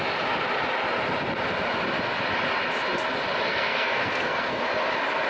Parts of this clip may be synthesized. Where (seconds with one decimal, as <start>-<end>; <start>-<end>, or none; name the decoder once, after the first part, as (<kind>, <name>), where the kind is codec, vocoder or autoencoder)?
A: 3.5-4.6 (codec, SNAC)